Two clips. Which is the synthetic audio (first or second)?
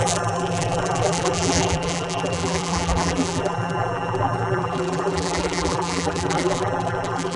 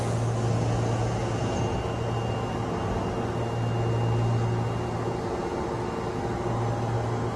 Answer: first